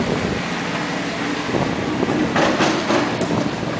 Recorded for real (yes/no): yes